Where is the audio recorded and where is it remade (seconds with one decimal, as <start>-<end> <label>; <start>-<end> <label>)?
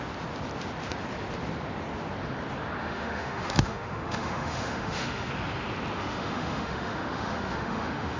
0.0-2.8 recorded; 2.8-5.3 remade; 5.3-6.0 recorded; 6.0-8.2 remade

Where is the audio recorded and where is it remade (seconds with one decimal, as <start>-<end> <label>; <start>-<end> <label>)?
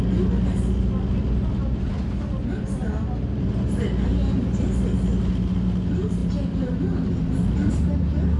0.0-8.4 recorded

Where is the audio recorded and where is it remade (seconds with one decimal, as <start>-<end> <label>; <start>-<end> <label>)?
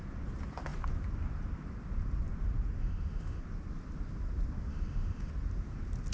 0.0-2.8 recorded; 2.8-3.4 remade; 3.4-4.7 recorded; 4.7-5.3 remade; 5.3-6.1 recorded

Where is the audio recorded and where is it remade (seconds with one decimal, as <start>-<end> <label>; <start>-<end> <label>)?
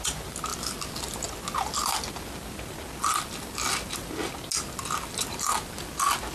0.0-6.3 recorded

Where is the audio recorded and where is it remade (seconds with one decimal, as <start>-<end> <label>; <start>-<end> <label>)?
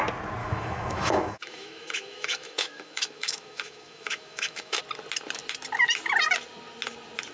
0.0-0.4 recorded; 0.4-4.8 remade; 4.8-7.3 recorded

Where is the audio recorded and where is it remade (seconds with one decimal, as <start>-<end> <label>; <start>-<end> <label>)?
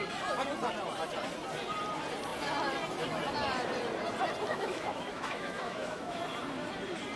0.0-4.5 recorded; 4.5-6.2 remade; 6.2-7.2 recorded